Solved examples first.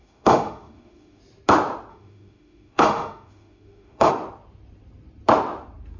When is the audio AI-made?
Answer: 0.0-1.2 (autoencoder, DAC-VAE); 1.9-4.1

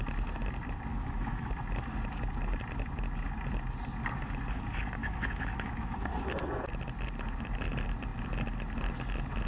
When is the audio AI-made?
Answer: 0.9-1.5 (autoencoder, DAC-VAE); 5.0-6.0

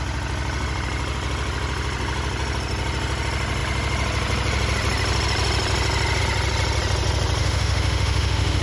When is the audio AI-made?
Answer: 7.4-8.6 (autoencoder, DAC-VAE)

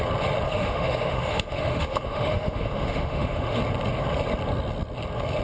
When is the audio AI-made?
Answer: 0.5-3.6 (autoencoder, DAC-VAE)

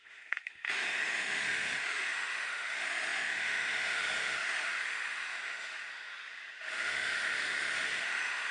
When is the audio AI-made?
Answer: 0.0-8.5 (autoencoder, DAC-VAE)

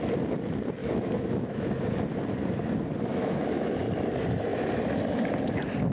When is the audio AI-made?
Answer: 0.8-1.7 (autoencoder, DAC-VAE); 3.1-3.8

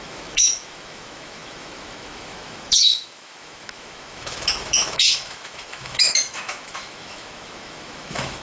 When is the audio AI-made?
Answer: 0.0-8.4 (autoencoder, DAC-VAE)

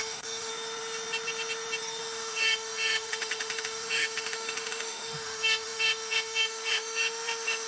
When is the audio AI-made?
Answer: 0.0-0.5 (autoencoder, DAC-VAE); 2.0-7.7